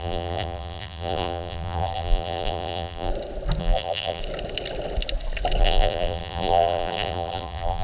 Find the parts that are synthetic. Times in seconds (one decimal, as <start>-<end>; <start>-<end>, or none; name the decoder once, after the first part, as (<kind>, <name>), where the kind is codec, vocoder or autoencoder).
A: 0.0-3.1 (vocoder, BigVGAN v2); 3.6-4.2; 5.6-7.8